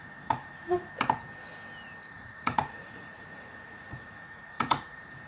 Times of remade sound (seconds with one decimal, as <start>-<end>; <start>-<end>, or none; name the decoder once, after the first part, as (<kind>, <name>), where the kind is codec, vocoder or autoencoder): 0.0-0.9 (vocoder, Vocos); 2.1-5.3